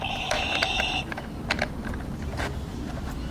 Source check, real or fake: real